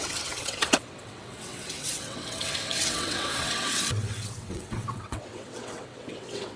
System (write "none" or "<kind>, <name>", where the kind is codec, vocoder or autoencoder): vocoder, WaveNeXt